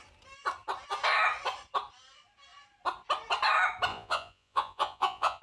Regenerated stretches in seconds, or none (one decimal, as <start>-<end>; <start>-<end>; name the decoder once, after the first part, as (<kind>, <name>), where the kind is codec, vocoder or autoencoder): 3.9-5.4 (vocoder, Vocos)